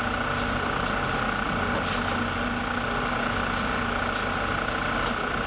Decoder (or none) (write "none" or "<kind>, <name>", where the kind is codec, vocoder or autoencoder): none